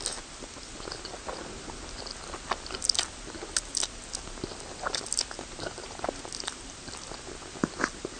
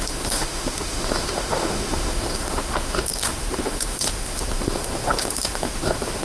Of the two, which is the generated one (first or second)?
second